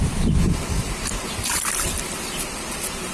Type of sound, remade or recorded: recorded